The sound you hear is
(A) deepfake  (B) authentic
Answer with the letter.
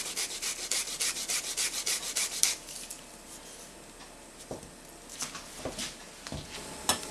B